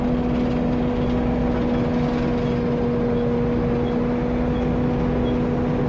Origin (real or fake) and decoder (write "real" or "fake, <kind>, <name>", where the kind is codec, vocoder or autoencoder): real